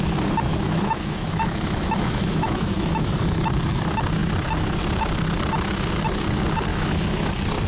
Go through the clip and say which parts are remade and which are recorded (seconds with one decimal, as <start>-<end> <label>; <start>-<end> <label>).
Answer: 0.0-0.5 recorded; 0.5-3.1 remade; 3.1-6.7 recorded; 6.7-7.3 remade; 7.3-7.7 recorded